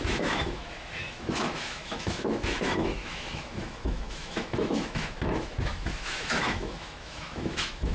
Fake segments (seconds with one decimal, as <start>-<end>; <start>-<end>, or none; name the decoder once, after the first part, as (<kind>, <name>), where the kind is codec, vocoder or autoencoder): 0.0-7.9 (autoencoder, DAC-VAE)